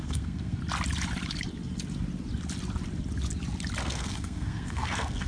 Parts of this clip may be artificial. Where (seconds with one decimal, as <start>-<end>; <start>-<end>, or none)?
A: 0.0-0.6; 3.8-5.3